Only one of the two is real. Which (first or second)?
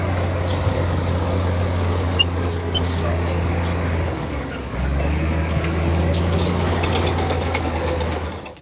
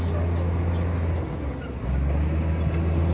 second